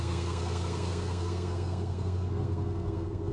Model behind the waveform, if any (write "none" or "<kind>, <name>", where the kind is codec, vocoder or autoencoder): codec, SNAC